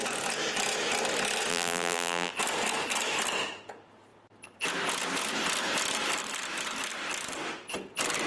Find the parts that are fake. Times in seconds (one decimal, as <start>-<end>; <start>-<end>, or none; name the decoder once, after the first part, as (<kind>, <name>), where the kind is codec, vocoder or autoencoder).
1.5-2.3 (vocoder, BigVGAN v2)